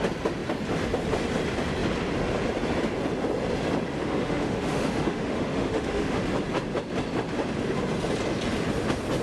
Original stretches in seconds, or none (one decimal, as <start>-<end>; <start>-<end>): 0.0-4.0; 6.2-9.2